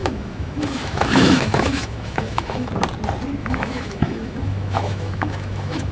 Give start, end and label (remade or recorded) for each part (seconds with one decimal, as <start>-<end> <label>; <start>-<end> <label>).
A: 0.0-2.7 remade; 2.7-3.4 recorded; 3.4-5.9 remade

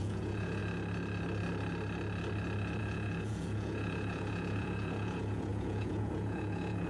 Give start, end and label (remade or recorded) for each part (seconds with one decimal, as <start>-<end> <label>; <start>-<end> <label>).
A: 0.0-0.6 remade; 0.6-2.8 recorded; 2.8-6.9 remade

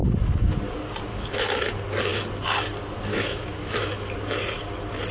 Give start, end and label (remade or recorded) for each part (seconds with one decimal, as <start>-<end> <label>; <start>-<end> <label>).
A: 0.0-1.1 recorded; 1.1-1.7 remade; 1.7-3.1 recorded; 3.1-4.1 remade; 4.1-5.1 recorded

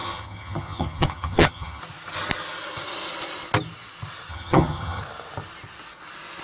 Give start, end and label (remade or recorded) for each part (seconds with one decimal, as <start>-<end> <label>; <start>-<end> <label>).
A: 0.0-1.8 remade; 1.8-4.3 recorded; 4.3-5.0 remade; 5.0-6.4 recorded

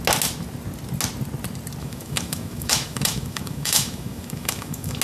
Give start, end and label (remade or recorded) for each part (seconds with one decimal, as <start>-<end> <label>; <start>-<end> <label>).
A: 0.0-1.8 recorded; 1.8-5.0 remade